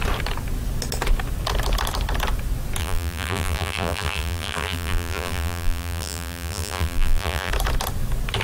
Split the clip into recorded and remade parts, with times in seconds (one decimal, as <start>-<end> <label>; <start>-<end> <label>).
0.0-2.8 recorded; 2.8-7.5 remade; 7.5-8.4 recorded